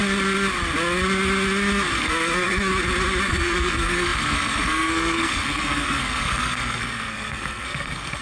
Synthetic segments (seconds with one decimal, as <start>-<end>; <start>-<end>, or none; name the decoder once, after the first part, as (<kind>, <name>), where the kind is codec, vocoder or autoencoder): 1.9-2.7 (codec, SNAC); 3.3-8.2